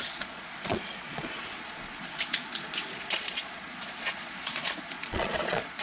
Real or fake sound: fake